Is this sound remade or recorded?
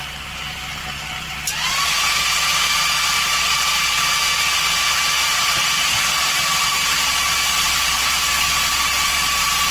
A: recorded